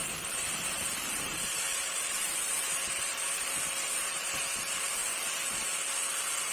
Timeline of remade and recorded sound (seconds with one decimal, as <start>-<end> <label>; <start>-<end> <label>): 0.0-3.1 remade; 3.1-6.5 recorded